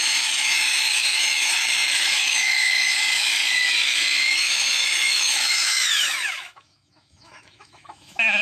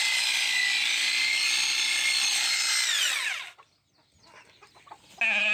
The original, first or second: second